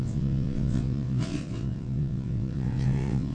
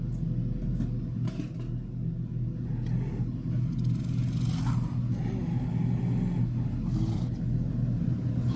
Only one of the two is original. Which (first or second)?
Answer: second